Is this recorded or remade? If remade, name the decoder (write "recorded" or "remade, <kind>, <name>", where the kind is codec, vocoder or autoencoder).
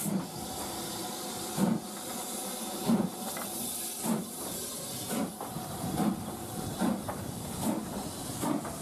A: recorded